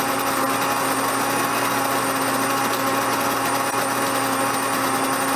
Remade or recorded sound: recorded